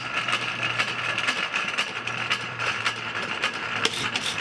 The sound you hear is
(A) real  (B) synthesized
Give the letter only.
B